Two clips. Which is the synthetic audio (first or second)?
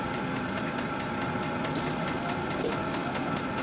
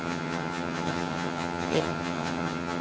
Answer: second